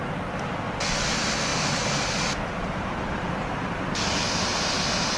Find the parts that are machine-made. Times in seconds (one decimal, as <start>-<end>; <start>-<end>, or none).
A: 1.5-4.6